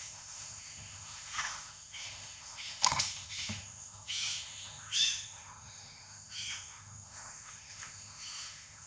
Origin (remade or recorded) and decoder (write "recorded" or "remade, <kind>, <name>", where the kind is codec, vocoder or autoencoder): remade, autoencoder, DAC-VAE